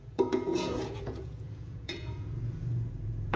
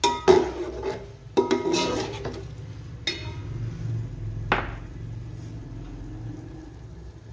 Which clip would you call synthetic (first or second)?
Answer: first